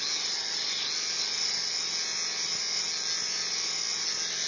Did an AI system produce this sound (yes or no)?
no